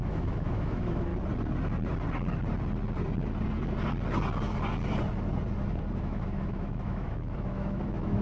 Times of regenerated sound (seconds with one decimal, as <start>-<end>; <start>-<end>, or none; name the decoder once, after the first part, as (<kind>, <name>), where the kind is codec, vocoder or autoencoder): 0.0-1.1 (autoencoder, DAC-VAE); 6.0-8.2